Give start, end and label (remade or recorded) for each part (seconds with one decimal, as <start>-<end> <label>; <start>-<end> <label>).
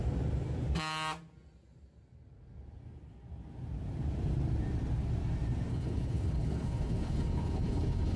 0.0-5.7 recorded; 5.7-8.2 remade